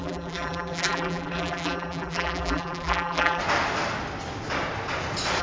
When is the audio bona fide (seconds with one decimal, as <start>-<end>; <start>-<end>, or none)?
3.4-5.4